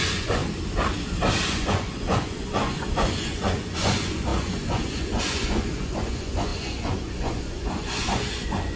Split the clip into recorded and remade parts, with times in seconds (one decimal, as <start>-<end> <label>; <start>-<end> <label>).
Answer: 0.0-0.4 remade; 0.4-1.5 recorded; 1.5-8.8 remade